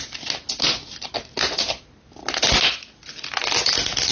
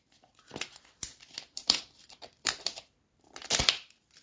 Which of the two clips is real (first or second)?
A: first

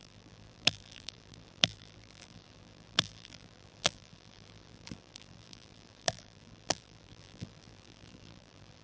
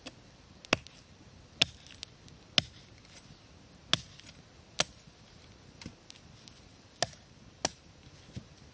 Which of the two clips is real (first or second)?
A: second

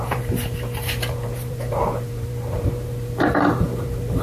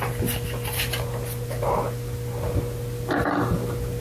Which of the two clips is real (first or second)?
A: second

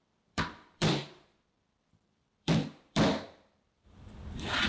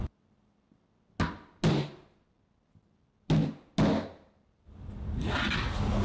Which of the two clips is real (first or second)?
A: second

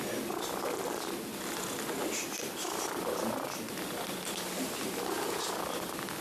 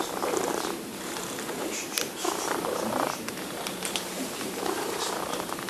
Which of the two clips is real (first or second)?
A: first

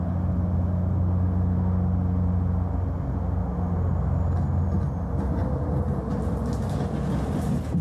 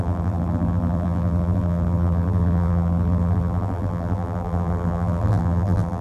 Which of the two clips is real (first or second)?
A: first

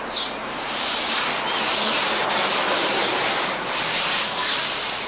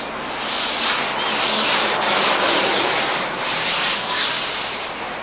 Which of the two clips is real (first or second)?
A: second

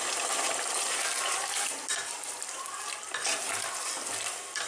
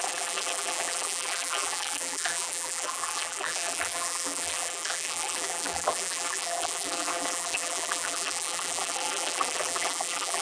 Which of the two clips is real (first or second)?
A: first